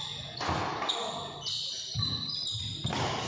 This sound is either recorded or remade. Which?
recorded